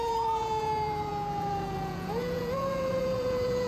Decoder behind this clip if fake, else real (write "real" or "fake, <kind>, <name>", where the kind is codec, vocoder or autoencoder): fake, vocoder, Vocos